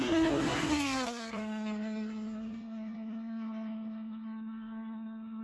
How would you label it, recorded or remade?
remade